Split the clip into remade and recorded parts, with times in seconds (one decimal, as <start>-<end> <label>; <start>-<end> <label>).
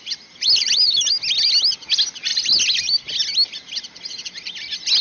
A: 0.0-5.0 recorded